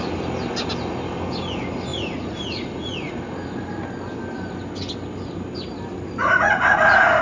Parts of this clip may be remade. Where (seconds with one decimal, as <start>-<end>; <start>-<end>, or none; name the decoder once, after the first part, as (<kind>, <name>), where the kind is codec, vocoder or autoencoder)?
1.9-3.2 (vocoder, Vocos); 6.2-7.2